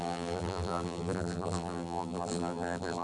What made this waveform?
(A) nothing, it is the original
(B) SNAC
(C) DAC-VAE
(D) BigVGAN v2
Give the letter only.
D